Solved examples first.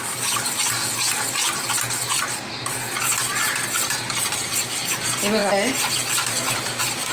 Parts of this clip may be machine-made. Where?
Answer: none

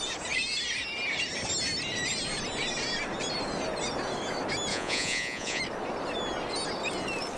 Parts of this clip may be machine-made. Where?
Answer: 4.7-5.6 (vocoder, Vocos)

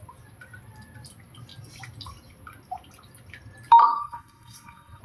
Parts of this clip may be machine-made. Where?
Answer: 3.8-5.0 (codec, SNAC)

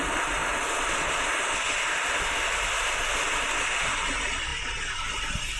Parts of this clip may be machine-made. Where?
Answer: none

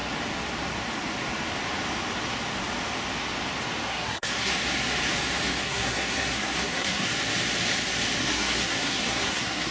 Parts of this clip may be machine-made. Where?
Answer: 3.9-4.5 (codec, SNAC); 5.6-7.1; 8.2-9.7

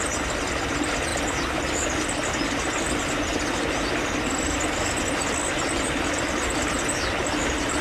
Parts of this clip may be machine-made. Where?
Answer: none